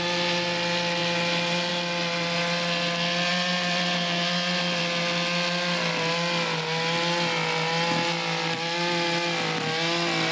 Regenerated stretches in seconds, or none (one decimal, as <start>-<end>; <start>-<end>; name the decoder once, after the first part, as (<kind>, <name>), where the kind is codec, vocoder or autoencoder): 1.0-1.7 (vocoder, BigVGAN v2); 3.3-4.8